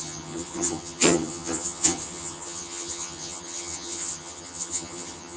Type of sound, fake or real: fake